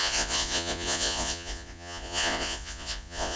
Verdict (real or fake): fake